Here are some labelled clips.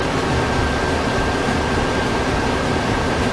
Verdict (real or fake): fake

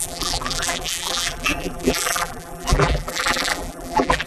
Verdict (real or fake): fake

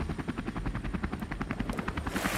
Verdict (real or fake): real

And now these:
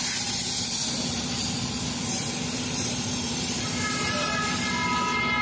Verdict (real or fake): fake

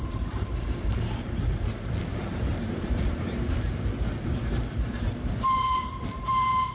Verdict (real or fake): fake